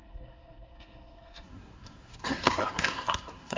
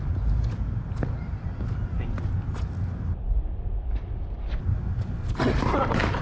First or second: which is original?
second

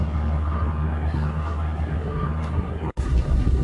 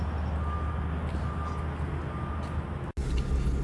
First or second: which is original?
second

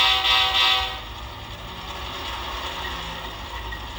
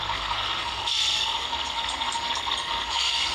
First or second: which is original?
first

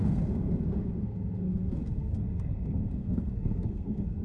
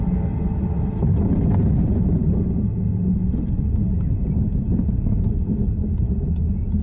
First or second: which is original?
second